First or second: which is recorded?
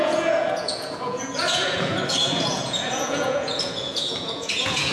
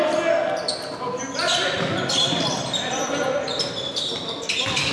second